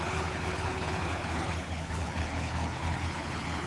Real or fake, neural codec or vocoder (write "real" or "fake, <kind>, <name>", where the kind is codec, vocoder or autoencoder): fake, codec, HILCodec